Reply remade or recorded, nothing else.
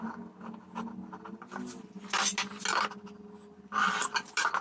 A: recorded